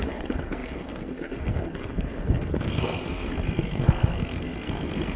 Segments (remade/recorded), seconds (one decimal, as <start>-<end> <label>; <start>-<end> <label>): 0.0-5.2 remade